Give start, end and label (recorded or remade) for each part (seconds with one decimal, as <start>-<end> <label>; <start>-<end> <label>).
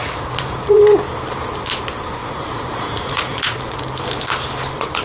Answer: 0.0-0.8 remade; 0.8-2.2 recorded; 2.2-3.8 remade; 3.8-5.0 recorded